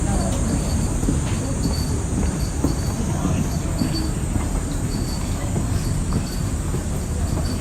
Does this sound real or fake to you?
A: real